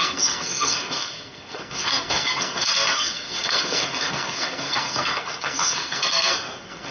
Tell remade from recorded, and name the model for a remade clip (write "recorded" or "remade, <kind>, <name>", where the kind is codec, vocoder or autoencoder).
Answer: remade, codec, SNAC